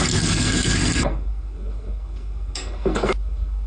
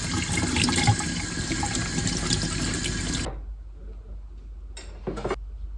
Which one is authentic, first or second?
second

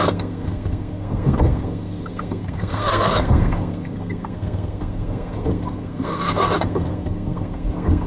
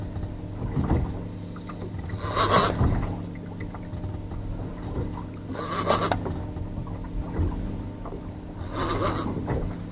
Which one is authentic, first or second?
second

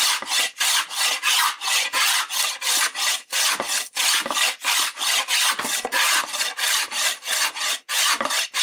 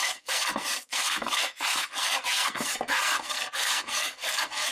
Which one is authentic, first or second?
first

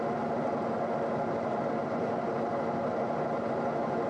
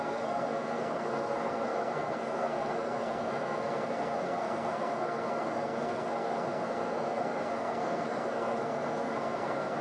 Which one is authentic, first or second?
first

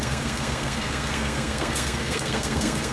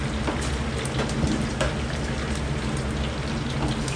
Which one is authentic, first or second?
second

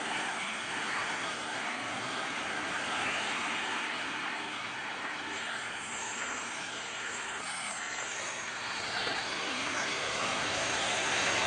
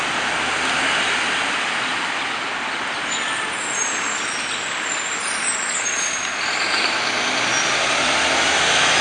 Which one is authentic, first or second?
second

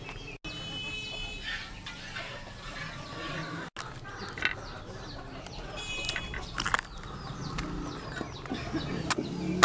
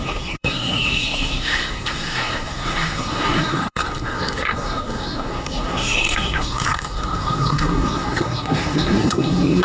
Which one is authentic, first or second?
first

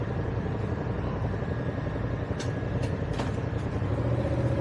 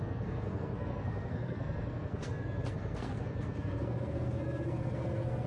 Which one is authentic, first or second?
first